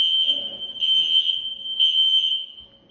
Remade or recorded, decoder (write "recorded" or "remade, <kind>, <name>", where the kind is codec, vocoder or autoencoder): recorded